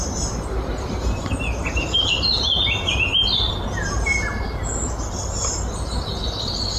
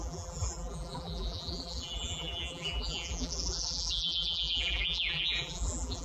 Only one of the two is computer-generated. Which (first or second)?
second